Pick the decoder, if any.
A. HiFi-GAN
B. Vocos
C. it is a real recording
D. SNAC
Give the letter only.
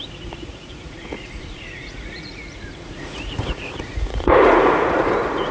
B